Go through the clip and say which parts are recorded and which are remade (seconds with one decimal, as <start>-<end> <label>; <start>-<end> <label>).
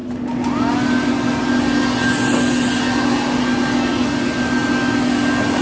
0.0-5.6 recorded